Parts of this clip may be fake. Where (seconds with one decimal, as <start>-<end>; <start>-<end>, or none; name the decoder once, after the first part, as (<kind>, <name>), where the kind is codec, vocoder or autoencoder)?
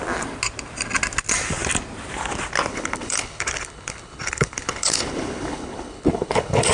2.7-6.7 (codec, HILCodec)